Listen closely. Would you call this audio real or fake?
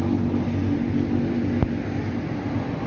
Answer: real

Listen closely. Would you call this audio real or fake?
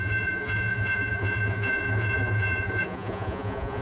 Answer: fake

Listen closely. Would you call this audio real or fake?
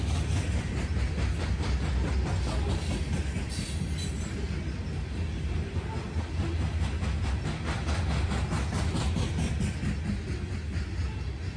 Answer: real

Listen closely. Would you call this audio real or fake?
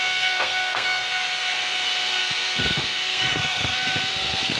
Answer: fake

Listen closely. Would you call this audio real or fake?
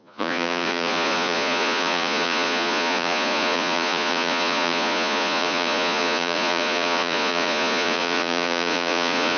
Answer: fake